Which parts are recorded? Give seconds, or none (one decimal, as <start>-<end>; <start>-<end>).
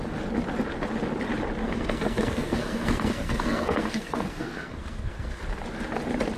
0.0-1.6; 5.4-6.4